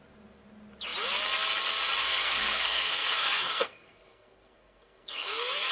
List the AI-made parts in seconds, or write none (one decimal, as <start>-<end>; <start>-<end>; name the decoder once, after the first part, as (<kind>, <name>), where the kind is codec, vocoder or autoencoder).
2.0-5.7 (codec, SNAC)